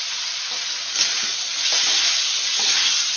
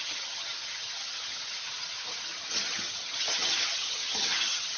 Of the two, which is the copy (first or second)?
second